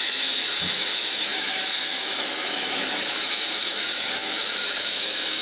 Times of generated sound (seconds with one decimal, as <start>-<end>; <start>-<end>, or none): 0.0-5.4